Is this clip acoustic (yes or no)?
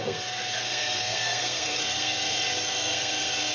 no